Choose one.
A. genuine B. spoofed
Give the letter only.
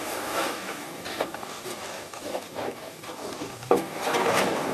B